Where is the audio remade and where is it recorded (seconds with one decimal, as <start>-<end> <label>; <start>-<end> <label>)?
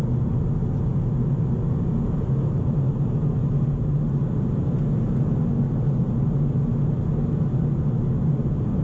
0.0-8.8 recorded